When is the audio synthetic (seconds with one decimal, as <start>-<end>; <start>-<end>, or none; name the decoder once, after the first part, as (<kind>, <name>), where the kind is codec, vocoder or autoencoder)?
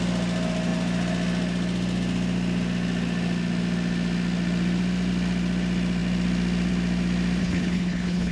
7.4-8.3 (codec, HILCodec)